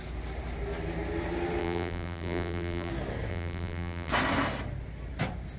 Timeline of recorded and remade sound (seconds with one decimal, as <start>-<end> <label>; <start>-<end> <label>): 0.0-1.6 recorded; 1.6-2.9 remade; 2.9-3.3 recorded; 3.3-4.1 remade; 4.1-5.6 recorded